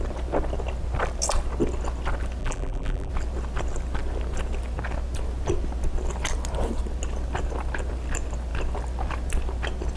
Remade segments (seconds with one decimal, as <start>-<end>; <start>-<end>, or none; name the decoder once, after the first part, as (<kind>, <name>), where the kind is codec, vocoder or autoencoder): 2.4-3.1 (vocoder, BigVGAN v2)